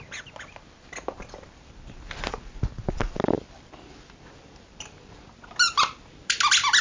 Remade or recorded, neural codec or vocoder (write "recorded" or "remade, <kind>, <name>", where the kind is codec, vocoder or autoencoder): recorded